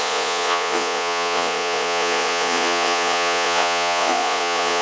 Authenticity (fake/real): fake